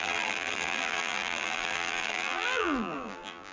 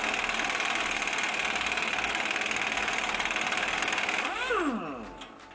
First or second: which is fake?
first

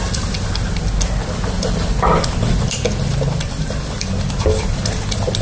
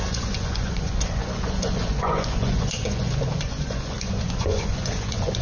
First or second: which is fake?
second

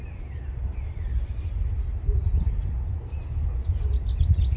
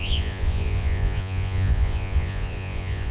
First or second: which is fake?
second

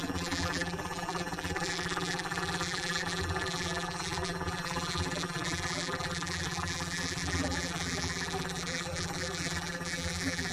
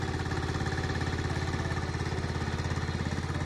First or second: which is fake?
first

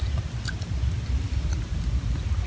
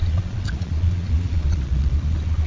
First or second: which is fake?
second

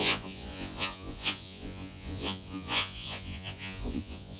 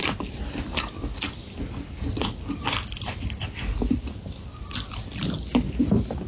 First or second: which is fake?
first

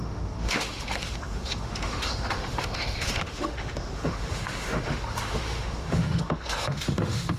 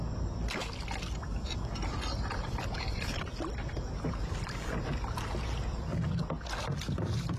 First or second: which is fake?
first